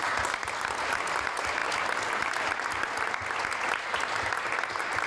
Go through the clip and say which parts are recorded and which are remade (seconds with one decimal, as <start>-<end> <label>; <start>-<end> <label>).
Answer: 0.0-5.1 recorded